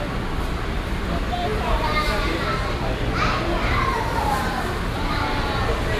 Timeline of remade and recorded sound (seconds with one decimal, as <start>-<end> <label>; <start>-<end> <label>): 0.0-6.0 recorded